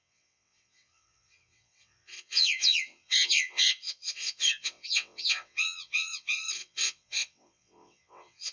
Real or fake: fake